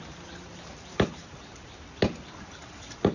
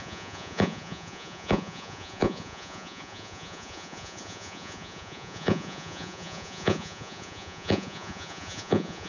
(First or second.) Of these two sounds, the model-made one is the second